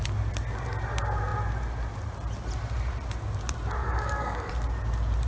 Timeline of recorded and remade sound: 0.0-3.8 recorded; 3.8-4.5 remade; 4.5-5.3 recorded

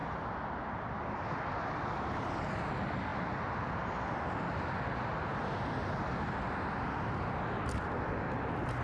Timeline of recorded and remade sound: 0.0-8.8 recorded

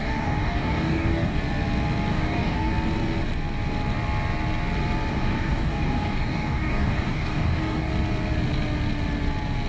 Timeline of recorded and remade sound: 0.0-1.4 remade; 1.4-2.1 recorded; 2.1-2.7 remade; 2.7-5.1 recorded; 5.1-7.9 remade; 7.9-9.7 recorded